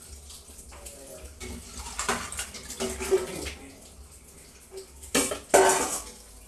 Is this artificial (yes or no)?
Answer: no